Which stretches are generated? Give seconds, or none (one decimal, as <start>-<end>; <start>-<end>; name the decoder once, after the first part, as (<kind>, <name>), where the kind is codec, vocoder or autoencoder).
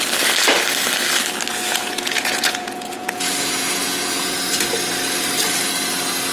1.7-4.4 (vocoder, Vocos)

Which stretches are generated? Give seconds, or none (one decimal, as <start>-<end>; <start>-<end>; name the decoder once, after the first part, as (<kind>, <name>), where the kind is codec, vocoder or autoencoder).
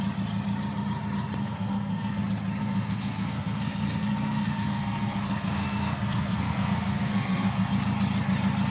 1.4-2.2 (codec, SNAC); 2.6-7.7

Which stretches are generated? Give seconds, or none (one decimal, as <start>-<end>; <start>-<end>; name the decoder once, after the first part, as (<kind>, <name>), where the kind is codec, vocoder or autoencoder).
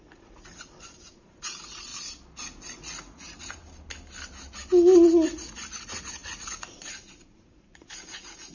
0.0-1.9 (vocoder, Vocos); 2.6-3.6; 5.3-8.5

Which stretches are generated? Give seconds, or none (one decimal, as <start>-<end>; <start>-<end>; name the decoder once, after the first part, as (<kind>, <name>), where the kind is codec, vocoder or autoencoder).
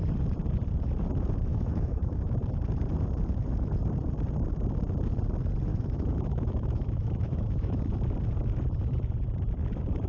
1.5-2.3 (autoencoder, DAC-VAE); 5.7-7.8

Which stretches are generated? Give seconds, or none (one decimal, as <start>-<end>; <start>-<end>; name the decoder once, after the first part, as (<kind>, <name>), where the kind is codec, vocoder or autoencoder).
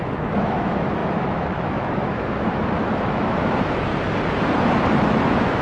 0.0-3.9 (autoencoder, DAC-VAE); 4.9-5.6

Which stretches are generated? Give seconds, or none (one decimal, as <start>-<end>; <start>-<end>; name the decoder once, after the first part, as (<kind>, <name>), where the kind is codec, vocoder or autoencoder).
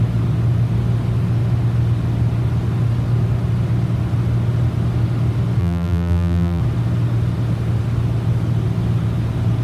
5.6-6.6 (vocoder, BigVGAN v2)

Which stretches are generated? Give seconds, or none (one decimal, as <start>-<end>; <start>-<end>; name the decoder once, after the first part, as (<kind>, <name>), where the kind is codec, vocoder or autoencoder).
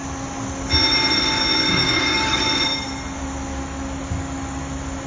1.7-2.4 (codec, DAC)